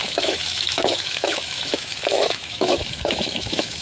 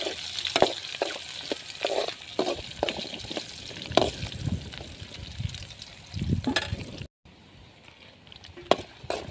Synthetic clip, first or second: first